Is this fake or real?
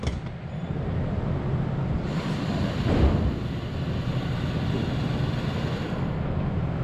real